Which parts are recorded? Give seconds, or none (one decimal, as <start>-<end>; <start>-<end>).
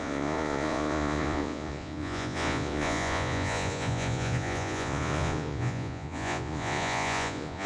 none